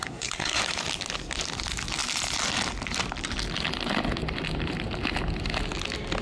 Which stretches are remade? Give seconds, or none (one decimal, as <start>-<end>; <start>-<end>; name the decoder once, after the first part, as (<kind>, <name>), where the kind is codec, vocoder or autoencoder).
0.0-0.6 (codec, SNAC)